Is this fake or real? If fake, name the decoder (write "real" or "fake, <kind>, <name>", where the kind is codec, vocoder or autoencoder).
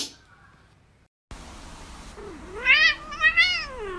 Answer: real